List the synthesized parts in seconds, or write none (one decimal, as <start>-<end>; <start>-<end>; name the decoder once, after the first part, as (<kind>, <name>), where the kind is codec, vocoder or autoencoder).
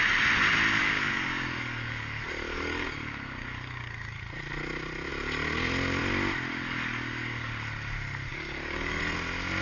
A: 0.8-4.2 (codec, DAC); 6.5-7.5; 8.3-9.0